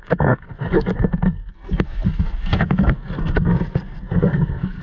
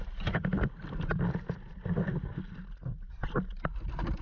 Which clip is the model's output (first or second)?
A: first